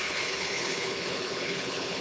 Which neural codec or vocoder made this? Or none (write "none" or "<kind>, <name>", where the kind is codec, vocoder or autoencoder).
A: codec, HILCodec